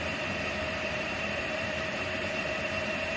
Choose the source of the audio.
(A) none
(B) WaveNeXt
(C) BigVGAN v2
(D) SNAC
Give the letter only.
C